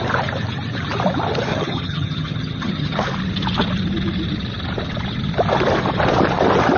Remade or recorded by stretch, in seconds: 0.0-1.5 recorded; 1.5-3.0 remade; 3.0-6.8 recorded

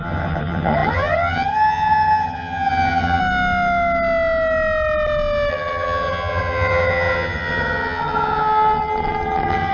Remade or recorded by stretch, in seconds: 0.0-3.2 remade; 3.2-5.5 recorded; 5.5-9.7 remade

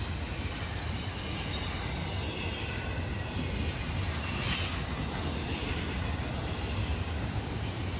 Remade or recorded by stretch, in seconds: 0.0-6.8 recorded; 6.8-7.6 remade; 7.6-8.0 recorded